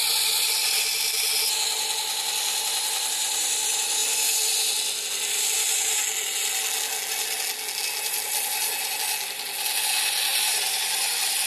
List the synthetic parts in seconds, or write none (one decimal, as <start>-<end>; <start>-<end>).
0.0-0.8; 10.3-10.8